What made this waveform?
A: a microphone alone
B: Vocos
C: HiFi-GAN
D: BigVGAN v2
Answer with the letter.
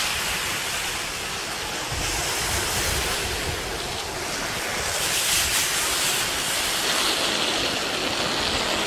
A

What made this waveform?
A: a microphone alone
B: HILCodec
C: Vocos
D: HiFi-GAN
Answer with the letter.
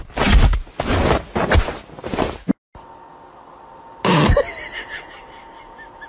A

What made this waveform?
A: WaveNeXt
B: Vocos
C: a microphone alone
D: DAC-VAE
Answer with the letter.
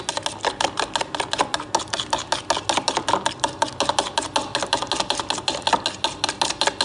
C